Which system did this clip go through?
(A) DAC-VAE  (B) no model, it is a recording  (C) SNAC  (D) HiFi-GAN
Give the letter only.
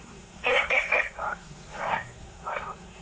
C